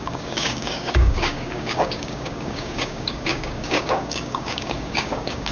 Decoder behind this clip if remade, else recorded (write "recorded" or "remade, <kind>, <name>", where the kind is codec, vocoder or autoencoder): remade, codec, DAC